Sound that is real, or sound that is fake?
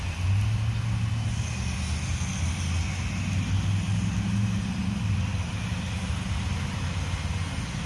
real